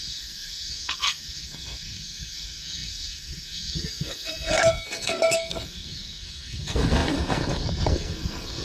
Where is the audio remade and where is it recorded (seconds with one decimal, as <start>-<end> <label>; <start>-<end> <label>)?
0.0-8.6 remade